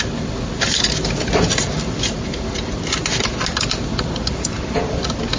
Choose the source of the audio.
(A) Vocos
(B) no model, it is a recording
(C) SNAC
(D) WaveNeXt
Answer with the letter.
B